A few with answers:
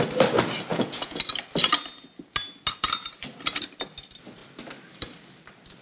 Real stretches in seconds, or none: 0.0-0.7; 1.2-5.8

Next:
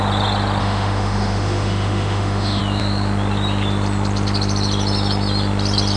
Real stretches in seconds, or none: 0.0-0.6; 2.6-6.0

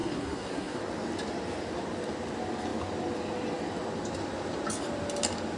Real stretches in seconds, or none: 0.8-5.6

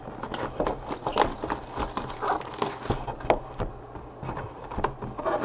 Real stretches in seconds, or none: 0.0-5.4